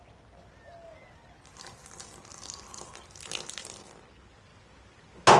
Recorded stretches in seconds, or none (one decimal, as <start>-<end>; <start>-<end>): 0.0-5.4